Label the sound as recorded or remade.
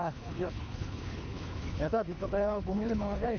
remade